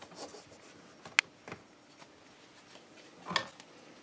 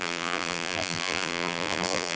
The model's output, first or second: second